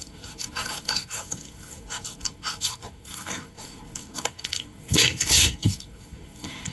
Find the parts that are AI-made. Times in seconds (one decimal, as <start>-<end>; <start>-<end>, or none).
0.0-6.7